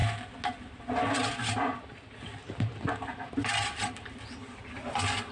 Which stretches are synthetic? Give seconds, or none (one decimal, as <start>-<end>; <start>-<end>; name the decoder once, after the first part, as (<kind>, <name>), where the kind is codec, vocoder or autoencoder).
2.4-5.3 (vocoder, BigVGAN v2)